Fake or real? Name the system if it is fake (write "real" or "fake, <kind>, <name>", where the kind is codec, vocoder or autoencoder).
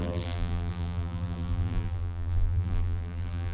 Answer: fake, vocoder, BigVGAN v2